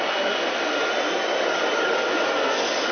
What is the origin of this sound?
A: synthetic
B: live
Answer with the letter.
B